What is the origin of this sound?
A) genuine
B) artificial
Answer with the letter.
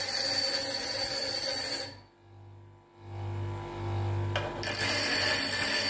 A